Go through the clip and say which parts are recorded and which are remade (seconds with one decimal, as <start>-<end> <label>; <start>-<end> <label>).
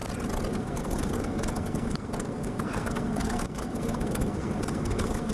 0.0-0.5 recorded; 0.5-5.3 remade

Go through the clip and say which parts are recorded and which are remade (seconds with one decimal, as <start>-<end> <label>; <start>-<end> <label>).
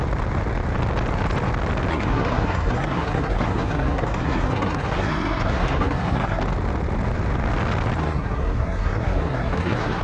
0.0-1.9 recorded; 1.9-6.4 remade; 6.4-8.0 recorded; 8.0-10.0 remade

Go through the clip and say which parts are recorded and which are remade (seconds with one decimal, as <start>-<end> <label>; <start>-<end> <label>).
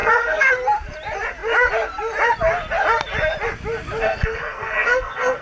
0.0-0.5 remade; 0.5-4.0 recorded; 4.0-5.4 remade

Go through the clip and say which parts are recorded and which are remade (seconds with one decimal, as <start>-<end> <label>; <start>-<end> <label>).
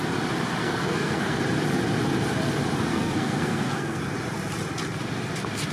0.0-0.6 recorded; 0.6-1.4 remade; 1.4-2.9 recorded; 2.9-4.0 remade; 4.0-5.7 recorded